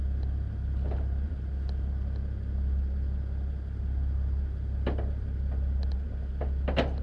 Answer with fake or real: real